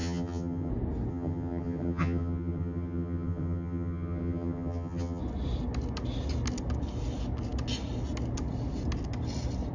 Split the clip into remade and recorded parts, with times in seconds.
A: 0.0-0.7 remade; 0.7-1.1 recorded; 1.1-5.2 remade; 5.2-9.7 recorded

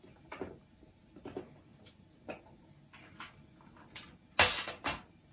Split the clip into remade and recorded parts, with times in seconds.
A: 0.0-5.3 recorded